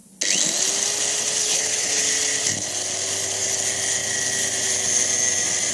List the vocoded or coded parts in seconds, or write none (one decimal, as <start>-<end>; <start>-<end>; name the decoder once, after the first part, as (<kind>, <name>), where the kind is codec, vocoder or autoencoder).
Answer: 1.4-2.0 (codec, HILCodec)